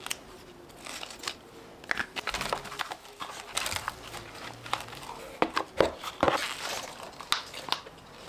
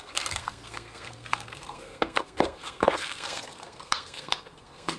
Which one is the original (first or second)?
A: first